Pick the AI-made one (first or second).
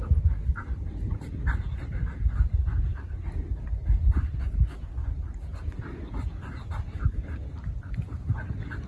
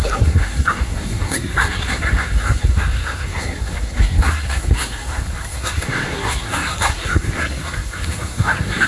second